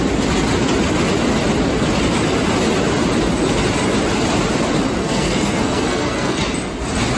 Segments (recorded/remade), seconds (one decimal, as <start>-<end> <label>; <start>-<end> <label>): 0.0-5.0 recorded; 5.0-6.4 remade; 6.4-7.2 recorded